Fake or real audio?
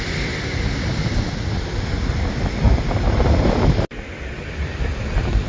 real